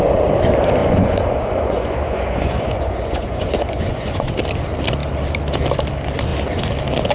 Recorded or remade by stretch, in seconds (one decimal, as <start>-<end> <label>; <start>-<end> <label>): 0.0-0.8 recorded; 0.8-4.3 remade; 4.3-7.1 recorded